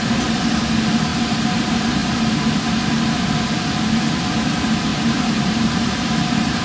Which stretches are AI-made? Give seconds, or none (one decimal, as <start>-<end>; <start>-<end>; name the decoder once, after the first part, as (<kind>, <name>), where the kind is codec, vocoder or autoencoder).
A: 4.9-6.6 (vocoder, BigVGAN v2)